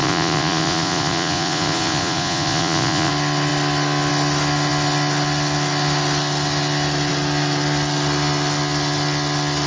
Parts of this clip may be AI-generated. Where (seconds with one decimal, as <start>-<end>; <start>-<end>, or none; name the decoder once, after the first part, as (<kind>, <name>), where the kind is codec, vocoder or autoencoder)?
0.0-3.1 (vocoder, Vocos)